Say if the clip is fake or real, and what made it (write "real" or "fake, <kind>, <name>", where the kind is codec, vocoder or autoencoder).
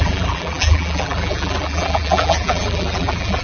fake, vocoder, BigVGAN v2